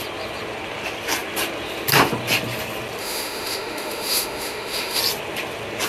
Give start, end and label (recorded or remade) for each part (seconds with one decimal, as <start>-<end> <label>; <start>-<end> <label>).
0.0-3.0 recorded; 3.0-5.0 remade; 5.0-5.9 recorded